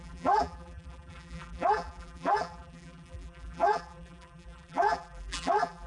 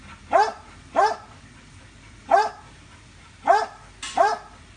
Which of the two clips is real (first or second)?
second